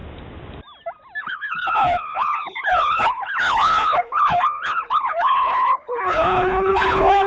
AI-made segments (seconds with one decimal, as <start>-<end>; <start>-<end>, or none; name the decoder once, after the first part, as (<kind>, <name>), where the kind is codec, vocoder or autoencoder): 1.2-7.3 (codec, HILCodec)